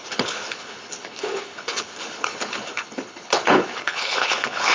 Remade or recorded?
remade